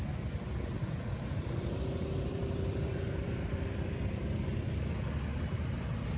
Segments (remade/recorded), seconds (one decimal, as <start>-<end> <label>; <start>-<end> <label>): 0.0-0.8 recorded; 0.8-4.5 remade; 4.5-5.3 recorded; 5.3-5.8 remade; 5.8-6.2 recorded